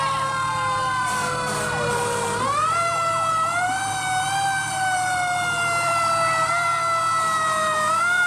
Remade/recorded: remade